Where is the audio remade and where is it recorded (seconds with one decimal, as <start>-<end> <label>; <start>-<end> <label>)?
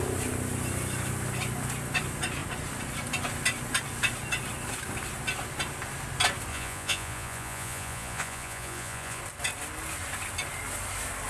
0.0-6.5 recorded; 6.5-9.2 remade; 9.2-11.3 recorded